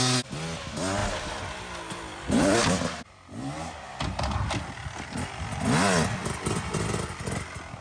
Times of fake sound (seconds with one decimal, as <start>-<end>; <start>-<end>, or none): none